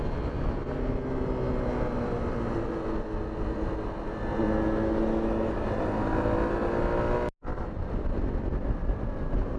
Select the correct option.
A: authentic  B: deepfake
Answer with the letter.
A